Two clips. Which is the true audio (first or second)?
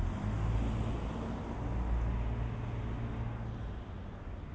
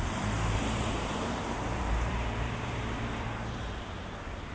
first